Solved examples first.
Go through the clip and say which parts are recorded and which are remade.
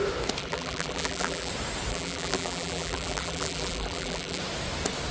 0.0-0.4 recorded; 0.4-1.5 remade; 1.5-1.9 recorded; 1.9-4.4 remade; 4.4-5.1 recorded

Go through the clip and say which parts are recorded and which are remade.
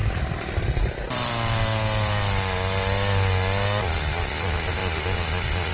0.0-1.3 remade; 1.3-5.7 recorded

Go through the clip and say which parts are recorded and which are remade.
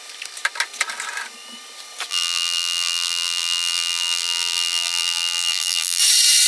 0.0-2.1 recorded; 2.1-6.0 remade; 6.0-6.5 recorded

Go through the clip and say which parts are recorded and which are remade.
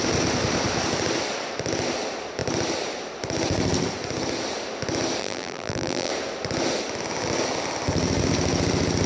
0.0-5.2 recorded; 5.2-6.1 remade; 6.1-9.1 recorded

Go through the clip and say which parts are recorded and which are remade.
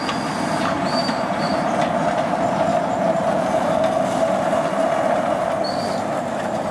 0.0-0.7 recorded; 0.7-1.7 remade; 1.7-2.7 recorded; 2.7-3.8 remade; 3.8-6.7 recorded